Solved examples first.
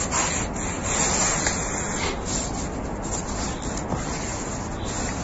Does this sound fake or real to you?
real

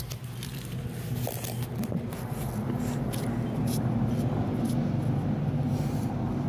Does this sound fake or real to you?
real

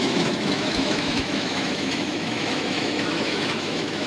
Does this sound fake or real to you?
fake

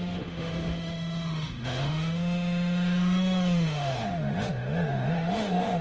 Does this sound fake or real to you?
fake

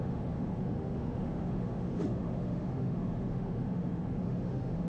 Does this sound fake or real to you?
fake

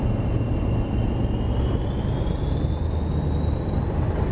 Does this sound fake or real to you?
real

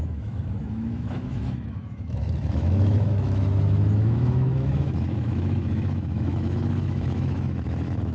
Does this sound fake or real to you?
fake